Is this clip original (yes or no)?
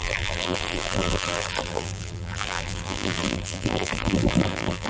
no